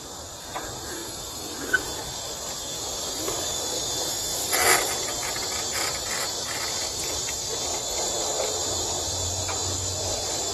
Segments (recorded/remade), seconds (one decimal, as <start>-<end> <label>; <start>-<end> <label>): 0.0-6.8 recorded; 6.8-7.5 remade; 7.5-8.6 recorded; 8.6-9.4 remade; 9.4-10.5 recorded